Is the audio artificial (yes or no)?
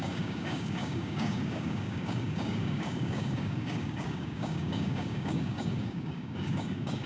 yes